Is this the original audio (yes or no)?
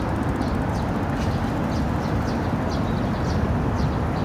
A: yes